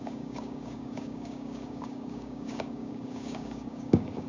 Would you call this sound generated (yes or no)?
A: yes